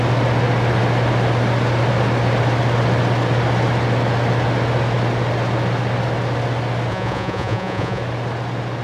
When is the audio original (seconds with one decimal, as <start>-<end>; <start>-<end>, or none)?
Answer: 0.0-6.9; 8.0-8.8